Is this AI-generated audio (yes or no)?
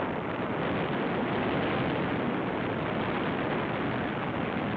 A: no